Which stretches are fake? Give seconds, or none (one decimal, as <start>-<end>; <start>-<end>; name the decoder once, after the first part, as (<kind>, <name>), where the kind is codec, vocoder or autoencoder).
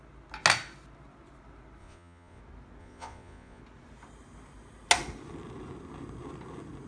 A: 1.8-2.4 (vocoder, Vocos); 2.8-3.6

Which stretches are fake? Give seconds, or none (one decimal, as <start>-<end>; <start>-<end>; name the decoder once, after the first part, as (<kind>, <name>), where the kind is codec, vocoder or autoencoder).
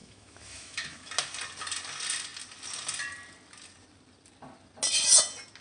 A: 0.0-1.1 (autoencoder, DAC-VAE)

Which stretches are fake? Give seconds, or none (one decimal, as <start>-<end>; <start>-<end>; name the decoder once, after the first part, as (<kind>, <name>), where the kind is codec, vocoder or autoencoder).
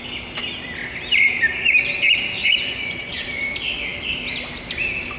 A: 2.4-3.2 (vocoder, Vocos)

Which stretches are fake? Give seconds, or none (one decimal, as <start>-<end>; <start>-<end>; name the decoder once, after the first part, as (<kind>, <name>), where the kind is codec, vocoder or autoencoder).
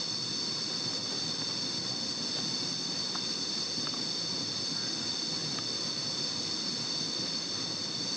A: none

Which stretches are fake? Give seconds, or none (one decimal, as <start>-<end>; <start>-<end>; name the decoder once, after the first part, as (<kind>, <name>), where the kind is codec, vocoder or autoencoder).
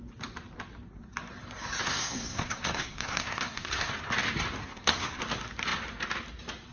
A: 1.8-3.9 (codec, SNAC); 4.6-5.2